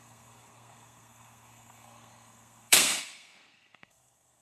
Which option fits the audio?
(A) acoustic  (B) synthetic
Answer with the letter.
B